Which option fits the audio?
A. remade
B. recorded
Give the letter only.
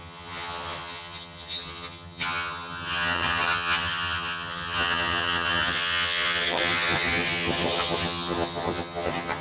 A